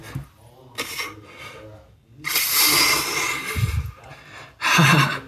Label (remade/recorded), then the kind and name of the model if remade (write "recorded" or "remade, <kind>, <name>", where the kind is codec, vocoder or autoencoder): recorded